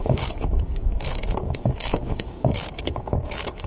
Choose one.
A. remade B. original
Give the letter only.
A